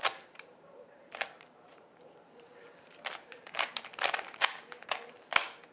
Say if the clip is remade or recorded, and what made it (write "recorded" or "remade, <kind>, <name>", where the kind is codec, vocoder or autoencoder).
remade, vocoder, BigVGAN v2